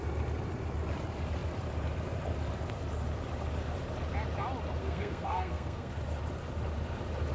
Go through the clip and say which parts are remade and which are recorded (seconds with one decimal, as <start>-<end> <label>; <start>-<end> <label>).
0.0-4.8 recorded; 4.8-5.9 remade; 5.9-7.3 recorded